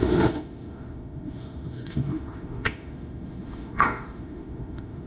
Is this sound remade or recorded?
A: remade